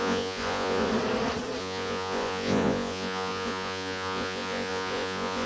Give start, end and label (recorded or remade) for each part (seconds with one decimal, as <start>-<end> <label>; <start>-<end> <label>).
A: 0.0-0.9 remade; 0.9-1.6 recorded; 1.6-5.5 remade

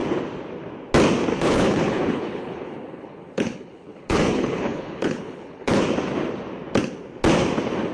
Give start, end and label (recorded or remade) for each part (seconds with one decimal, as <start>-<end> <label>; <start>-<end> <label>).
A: 0.0-1.3 recorded; 1.3-5.8 remade; 5.8-7.9 recorded

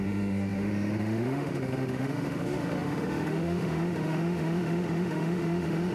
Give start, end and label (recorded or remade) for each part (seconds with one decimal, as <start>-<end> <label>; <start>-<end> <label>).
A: 0.0-5.9 remade

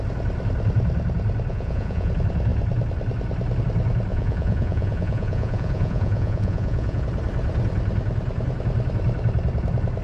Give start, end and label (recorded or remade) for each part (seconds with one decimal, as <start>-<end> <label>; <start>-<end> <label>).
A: 0.0-1.5 recorded; 1.5-2.1 remade; 2.1-4.1 recorded; 4.1-7.0 remade; 7.0-10.0 recorded

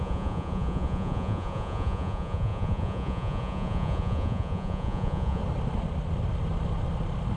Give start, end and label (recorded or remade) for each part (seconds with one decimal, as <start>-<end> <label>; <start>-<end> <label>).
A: 0.0-5.4 remade; 5.4-7.4 recorded

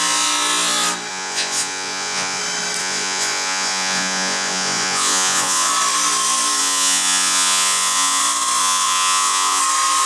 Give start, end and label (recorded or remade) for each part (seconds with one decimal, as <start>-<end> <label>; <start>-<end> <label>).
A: 0.0-1.1 recorded; 1.1-2.4 remade; 2.4-2.8 recorded; 2.8-5.7 remade; 5.7-6.6 recorded; 6.6-8.2 remade; 8.2-8.6 recorded; 8.6-9.6 remade; 9.6-10.1 recorded